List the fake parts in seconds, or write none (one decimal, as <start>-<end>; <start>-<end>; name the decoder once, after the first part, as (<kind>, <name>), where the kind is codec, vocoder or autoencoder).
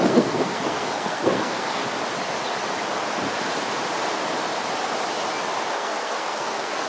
0.0-1.8 (codec, SNAC); 5.7-6.9